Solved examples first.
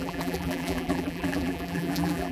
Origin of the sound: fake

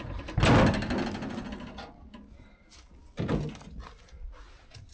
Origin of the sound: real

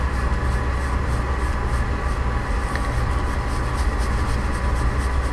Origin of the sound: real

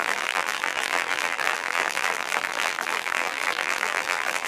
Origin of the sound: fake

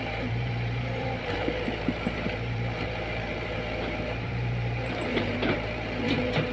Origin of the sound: fake